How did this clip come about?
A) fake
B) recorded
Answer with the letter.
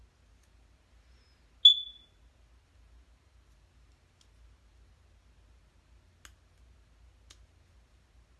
B